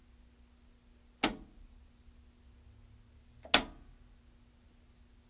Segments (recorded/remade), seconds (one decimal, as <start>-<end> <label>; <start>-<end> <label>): 0.0-5.3 recorded